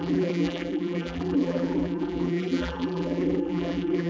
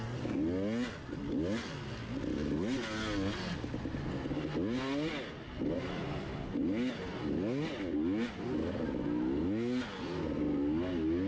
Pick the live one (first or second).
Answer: second